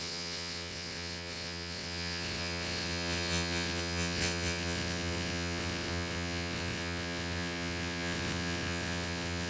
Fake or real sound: fake